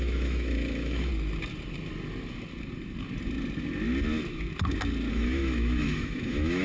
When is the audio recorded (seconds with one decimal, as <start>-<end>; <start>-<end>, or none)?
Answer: 1.1-5.1